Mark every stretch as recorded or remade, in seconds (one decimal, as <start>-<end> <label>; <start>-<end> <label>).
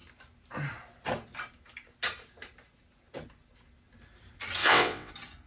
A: 0.0-4.6 recorded; 4.6-5.1 remade; 5.1-5.5 recorded